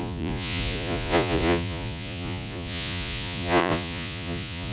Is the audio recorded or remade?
remade